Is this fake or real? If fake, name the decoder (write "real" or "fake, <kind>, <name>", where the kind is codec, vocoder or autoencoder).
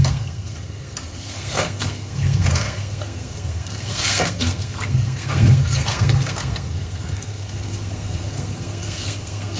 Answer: fake, codec, SNAC